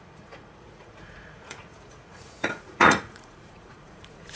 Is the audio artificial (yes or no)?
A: yes